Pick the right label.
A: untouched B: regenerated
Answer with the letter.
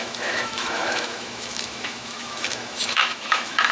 B